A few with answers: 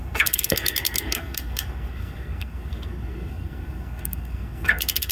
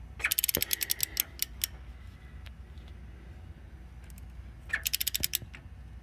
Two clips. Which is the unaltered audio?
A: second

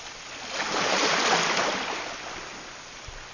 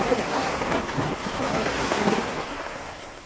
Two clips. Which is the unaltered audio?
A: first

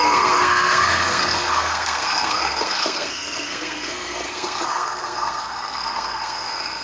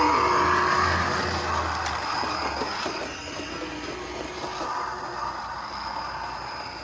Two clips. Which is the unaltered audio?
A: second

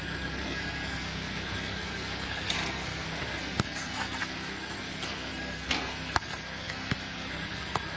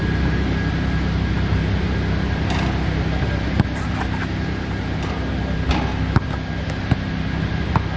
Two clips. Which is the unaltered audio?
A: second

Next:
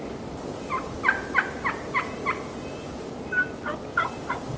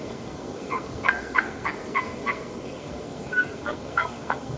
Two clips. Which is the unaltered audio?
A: first